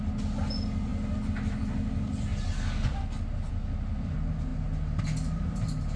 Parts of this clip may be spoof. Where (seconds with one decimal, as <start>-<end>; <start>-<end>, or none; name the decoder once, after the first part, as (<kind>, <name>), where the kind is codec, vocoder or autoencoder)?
none

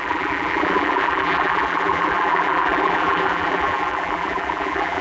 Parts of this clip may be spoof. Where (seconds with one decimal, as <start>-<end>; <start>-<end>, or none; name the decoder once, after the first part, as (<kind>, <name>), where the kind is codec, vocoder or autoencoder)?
0.0-5.0 (vocoder, BigVGAN v2)